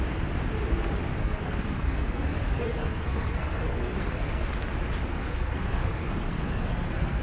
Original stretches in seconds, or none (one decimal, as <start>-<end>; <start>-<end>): 0.0-1.2; 4.5-5.1